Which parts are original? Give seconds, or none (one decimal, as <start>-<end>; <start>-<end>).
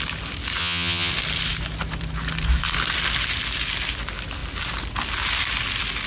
0.0-0.6; 1.1-6.1